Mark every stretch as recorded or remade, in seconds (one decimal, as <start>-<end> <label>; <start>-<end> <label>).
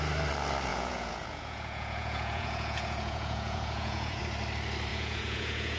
0.0-0.7 recorded; 0.7-4.2 remade; 4.2-4.9 recorded; 4.9-5.8 remade